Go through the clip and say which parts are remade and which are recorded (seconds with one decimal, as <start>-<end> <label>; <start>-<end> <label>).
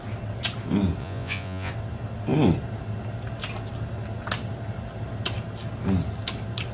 0.0-1.0 recorded; 1.0-1.7 remade; 1.7-6.7 recorded